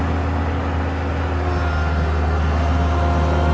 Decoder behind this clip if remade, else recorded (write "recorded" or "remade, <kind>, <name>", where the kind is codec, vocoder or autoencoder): recorded